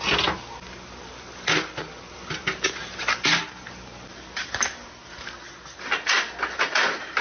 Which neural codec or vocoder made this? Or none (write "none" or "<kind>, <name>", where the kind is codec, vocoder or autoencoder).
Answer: none